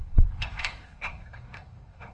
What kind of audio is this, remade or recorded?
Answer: remade